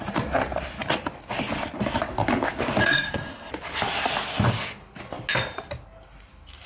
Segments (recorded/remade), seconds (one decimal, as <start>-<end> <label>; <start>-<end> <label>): 0.0-2.8 recorded; 2.8-3.5 remade; 3.5-6.7 recorded